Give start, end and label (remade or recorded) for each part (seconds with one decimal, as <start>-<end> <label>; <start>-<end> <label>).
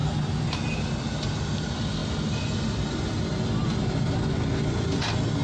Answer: 0.0-5.4 recorded